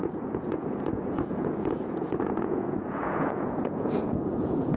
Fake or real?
fake